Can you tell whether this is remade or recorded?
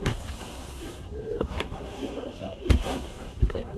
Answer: remade